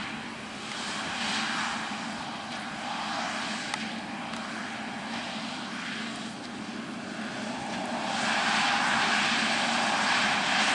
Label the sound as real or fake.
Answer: real